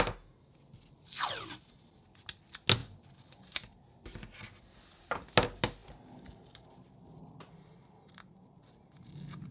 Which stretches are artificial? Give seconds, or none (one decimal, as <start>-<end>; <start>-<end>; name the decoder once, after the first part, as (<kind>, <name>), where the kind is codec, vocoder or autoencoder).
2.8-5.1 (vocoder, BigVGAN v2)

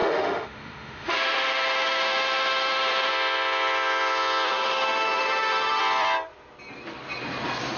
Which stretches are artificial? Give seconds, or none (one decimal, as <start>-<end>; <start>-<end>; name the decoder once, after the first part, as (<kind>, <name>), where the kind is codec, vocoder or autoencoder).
0.0-3.1 (autoencoder, DAC-VAE); 4.5-5.8

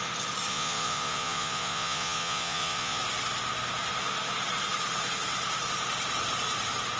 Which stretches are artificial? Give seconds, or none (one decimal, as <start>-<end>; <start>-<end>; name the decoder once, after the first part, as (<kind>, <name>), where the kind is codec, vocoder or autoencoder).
0.5-3.0 (vocoder, Vocos)